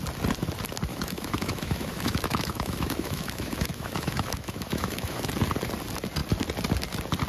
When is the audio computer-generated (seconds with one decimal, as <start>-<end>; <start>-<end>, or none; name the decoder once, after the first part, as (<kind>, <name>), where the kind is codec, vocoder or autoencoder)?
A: 0.9-5.3 (autoencoder, DAC-VAE)